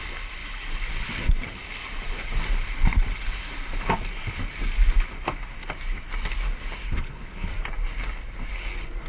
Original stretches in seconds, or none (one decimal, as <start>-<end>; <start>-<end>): 0.0-6.8; 7.5-9.1